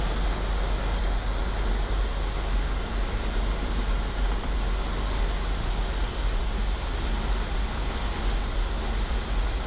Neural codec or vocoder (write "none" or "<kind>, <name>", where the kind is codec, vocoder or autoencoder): none